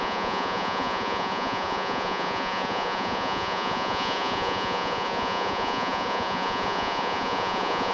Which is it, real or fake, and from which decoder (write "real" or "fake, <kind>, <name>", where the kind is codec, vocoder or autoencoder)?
fake, vocoder, Vocos